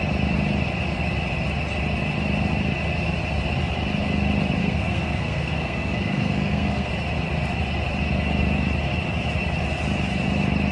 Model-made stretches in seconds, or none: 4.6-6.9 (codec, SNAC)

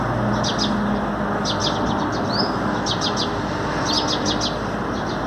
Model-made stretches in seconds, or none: none

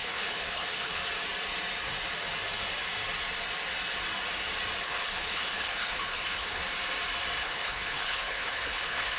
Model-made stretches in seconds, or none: 0.0-1.0 (codec, HILCodec); 4.8-6.6; 7.4-9.2

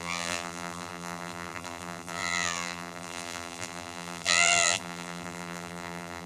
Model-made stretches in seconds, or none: 0.0-6.3 (vocoder, BigVGAN v2)

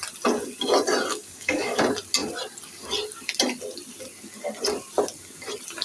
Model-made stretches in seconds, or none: 1.1-1.8 (codec, DAC)

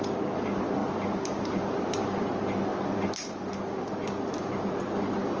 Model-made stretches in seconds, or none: 0.8-2.2 (vocoder, BigVGAN v2); 2.7-4.4